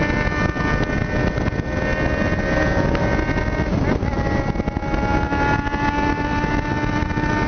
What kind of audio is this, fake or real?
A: real